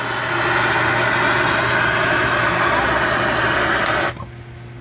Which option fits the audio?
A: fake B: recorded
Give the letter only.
B